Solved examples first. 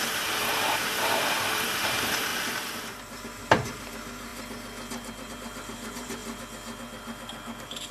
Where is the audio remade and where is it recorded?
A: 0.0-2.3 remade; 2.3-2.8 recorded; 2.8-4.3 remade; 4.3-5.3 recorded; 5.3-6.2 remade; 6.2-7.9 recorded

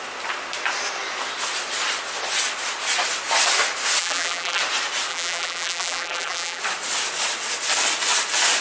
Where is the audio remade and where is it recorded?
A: 0.0-4.0 recorded; 4.0-4.6 remade; 4.6-5.1 recorded; 5.1-6.6 remade; 6.6-8.6 recorded

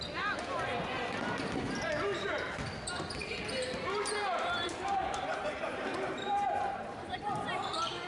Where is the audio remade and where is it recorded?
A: 0.0-3.2 recorded; 3.2-7.3 remade; 7.3-8.1 recorded

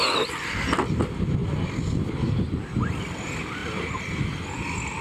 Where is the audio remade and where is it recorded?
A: 0.0-5.0 recorded

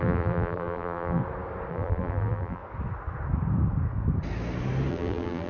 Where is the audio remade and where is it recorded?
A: 0.0-1.2 remade; 1.2-1.7 recorded; 1.7-2.6 remade; 2.6-4.9 recorded; 4.9-5.5 remade

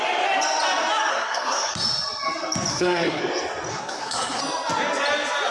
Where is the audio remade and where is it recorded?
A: 0.0-1.1 recorded; 1.1-1.7 remade; 1.7-2.7 recorded; 2.7-3.2 remade; 3.2-3.7 recorded; 3.7-4.4 remade; 4.4-5.5 recorded

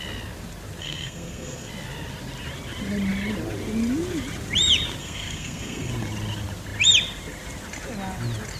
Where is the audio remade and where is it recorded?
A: 0.0-0.8 recorded; 0.8-1.7 remade; 1.7-5.0 recorded; 5.0-5.9 remade; 5.9-8.6 recorded